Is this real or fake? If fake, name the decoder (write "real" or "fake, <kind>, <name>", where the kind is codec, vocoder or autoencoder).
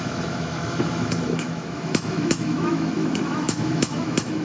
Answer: fake, autoencoder, DAC-VAE